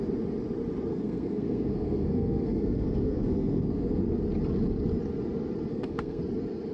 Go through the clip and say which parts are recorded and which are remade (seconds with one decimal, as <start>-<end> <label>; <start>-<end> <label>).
0.0-0.9 recorded; 0.9-4.2 remade; 4.2-5.7 recorded; 5.7-6.2 remade; 6.2-6.7 recorded